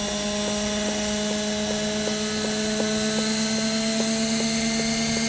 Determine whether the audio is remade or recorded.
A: recorded